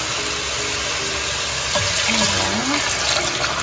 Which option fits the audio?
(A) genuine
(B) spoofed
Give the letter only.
A